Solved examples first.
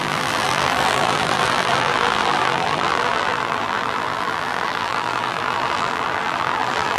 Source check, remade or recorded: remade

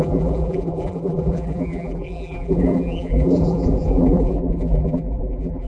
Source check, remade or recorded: remade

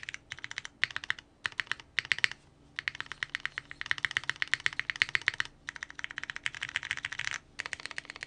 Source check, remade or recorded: recorded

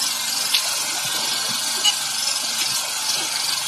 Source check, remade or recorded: recorded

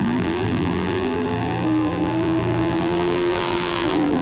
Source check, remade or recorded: remade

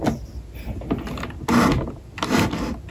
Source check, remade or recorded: recorded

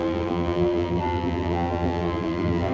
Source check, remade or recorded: remade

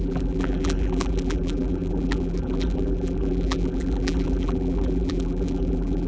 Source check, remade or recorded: remade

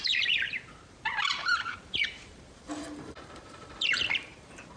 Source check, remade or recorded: remade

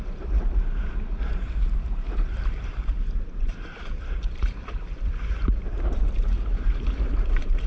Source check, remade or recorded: remade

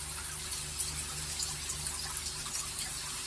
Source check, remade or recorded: recorded